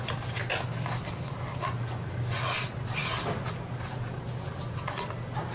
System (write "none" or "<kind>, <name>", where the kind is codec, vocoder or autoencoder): none